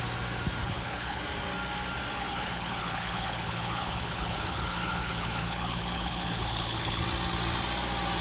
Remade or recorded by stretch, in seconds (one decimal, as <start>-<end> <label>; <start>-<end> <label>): 0.0-0.6 recorded; 0.6-1.2 remade; 1.2-2.2 recorded; 2.2-7.0 remade; 7.0-8.2 recorded